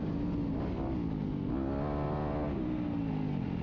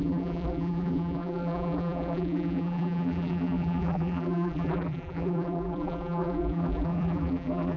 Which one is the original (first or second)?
first